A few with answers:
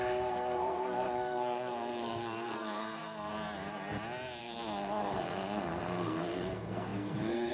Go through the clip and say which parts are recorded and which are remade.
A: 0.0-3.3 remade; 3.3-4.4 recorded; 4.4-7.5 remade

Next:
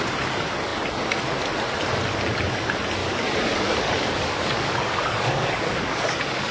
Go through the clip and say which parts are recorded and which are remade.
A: 0.0-3.0 recorded; 3.0-6.5 remade